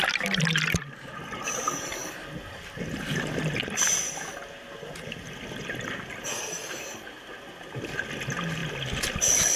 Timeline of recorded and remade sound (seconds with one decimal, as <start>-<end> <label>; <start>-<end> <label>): 0.0-6.3 recorded; 6.3-6.8 remade; 6.8-9.6 recorded